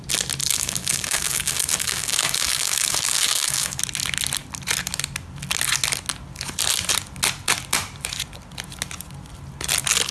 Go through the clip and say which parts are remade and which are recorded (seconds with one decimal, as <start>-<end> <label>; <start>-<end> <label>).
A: 0.0-0.4 recorded; 0.4-3.8 remade; 3.8-10.1 recorded